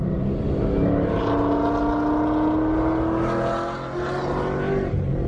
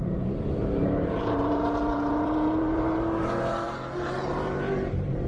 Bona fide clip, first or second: first